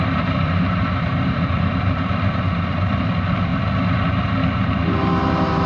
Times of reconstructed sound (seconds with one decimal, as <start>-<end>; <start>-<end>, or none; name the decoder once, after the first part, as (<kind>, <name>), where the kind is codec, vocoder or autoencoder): 0.0-3.5 (vocoder, BigVGAN v2); 4.6-5.7